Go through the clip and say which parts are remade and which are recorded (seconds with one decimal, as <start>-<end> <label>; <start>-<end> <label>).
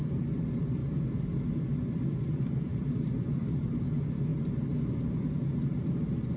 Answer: 0.0-0.8 remade; 0.8-1.5 recorded; 1.5-6.4 remade